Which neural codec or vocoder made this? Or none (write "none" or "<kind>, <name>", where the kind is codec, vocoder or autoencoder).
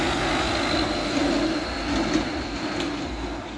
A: none